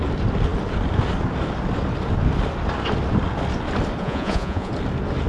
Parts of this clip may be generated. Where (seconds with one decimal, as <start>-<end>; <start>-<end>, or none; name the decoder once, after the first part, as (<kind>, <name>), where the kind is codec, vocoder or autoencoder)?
4.0-4.7 (vocoder, Vocos)